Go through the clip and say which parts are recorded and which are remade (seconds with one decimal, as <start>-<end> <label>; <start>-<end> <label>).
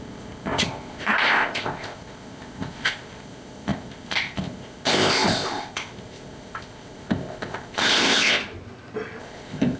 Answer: 0.0-8.4 remade; 8.4-9.2 recorded; 9.2-9.8 remade